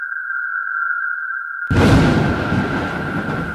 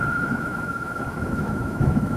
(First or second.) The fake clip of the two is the second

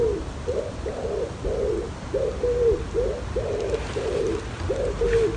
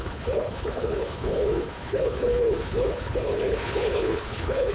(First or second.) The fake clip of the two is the second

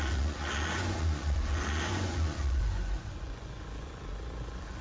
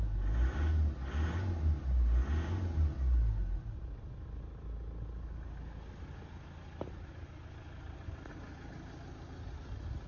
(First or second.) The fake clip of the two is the first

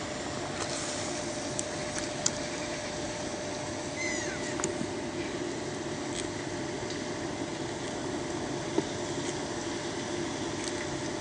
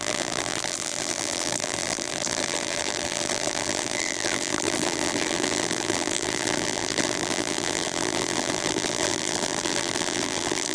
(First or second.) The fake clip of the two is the second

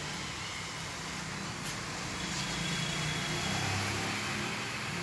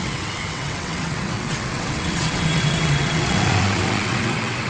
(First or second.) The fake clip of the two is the second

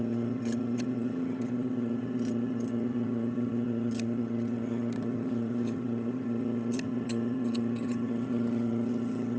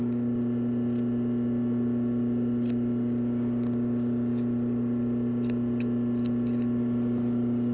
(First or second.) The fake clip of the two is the first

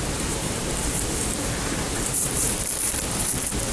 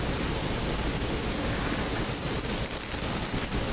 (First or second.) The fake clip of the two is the first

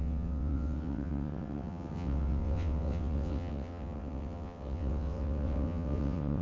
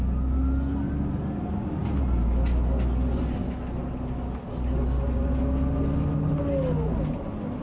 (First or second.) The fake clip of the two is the first